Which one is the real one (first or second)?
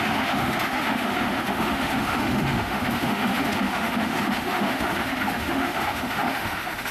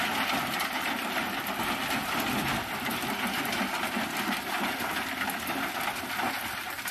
second